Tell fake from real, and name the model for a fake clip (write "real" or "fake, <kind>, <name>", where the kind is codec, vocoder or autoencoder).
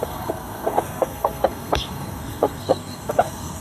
fake, codec, SNAC